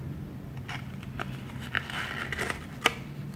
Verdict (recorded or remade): recorded